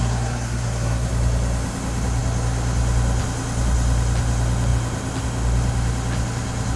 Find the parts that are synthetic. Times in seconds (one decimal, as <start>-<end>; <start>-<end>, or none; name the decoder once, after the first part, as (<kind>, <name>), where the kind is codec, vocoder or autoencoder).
0.0-1.1 (codec, SNAC)